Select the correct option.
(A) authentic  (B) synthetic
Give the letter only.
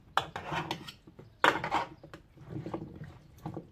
A